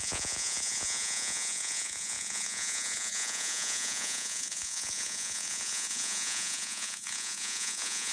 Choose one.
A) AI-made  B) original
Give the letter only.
A